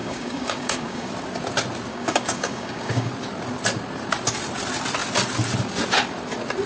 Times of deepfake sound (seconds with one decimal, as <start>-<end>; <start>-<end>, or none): 0.0-1.1; 1.9-3.1